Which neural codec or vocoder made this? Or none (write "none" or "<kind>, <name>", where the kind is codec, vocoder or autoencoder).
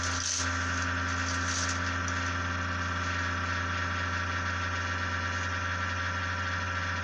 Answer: none